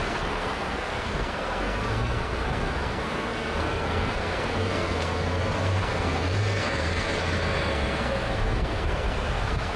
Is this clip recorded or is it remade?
remade